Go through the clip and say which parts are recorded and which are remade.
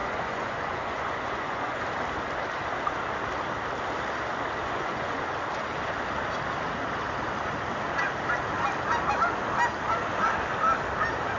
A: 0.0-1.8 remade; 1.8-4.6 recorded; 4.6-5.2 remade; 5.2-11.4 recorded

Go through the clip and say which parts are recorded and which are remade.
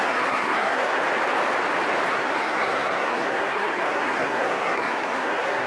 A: 0.0-1.0 remade; 1.0-2.1 recorded; 2.1-5.7 remade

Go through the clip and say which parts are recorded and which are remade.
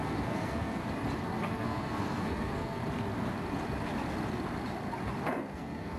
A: 0.0-0.8 remade; 0.8-1.4 recorded; 1.4-2.8 remade; 2.8-5.2 recorded; 5.2-6.0 remade